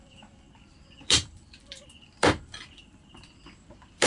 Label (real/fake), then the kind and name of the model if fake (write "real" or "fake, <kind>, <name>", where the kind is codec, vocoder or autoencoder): fake, vocoder, BigVGAN v2